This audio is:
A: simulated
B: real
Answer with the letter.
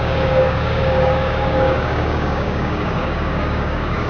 A